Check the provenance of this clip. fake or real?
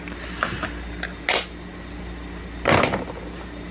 real